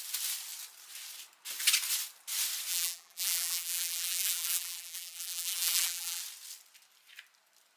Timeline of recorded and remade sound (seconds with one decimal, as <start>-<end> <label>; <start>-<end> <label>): 0.0-2.7 recorded; 2.7-6.2 remade; 6.2-7.8 recorded